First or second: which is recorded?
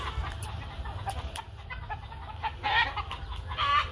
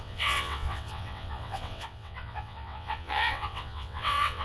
first